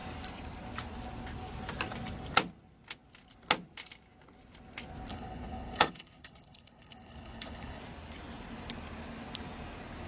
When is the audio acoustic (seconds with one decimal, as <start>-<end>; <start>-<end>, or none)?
0.0-5.1; 7.8-10.1